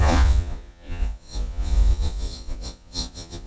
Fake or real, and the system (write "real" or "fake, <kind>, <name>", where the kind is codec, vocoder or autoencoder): fake, vocoder, Vocos